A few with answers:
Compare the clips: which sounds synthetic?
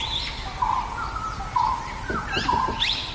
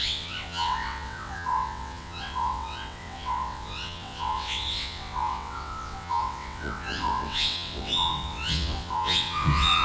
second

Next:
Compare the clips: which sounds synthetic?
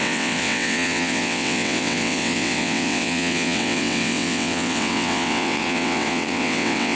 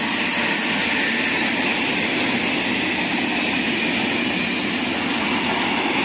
first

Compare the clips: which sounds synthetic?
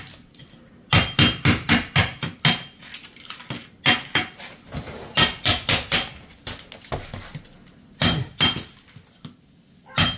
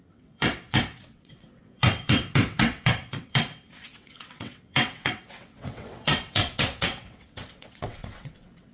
second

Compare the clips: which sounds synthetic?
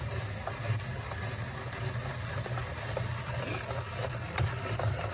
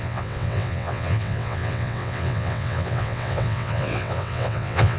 second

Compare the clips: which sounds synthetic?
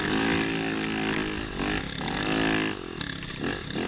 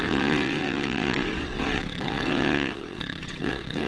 second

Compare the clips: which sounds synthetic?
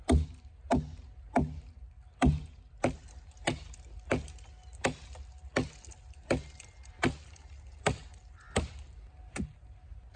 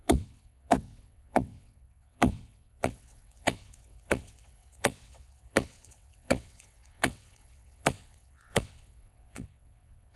second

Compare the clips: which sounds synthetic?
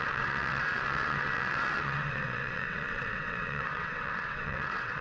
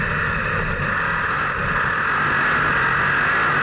first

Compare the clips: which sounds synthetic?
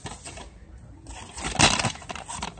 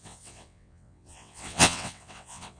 second